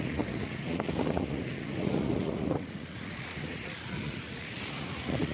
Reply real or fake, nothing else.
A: fake